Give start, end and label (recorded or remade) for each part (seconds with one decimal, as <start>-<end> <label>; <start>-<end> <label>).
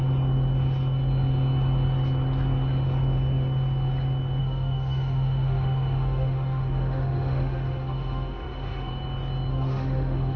0.0-4.4 recorded; 4.4-8.9 remade; 8.9-9.5 recorded; 9.5-10.4 remade